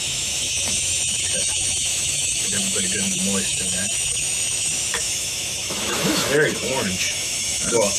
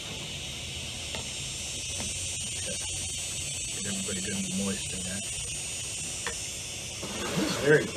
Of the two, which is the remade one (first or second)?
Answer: first